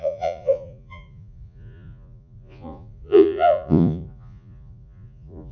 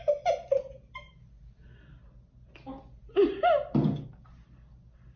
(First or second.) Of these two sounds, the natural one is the second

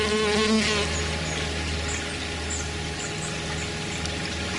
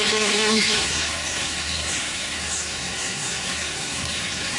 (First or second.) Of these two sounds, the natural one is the first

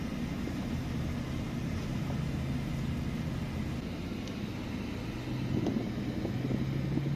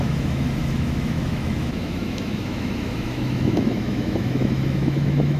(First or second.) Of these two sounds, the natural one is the first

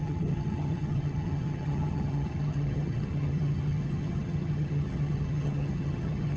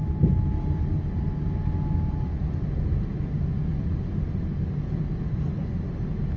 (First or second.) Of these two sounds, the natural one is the second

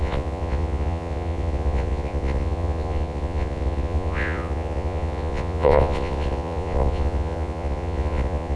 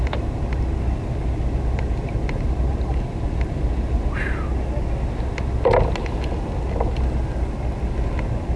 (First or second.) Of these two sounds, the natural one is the second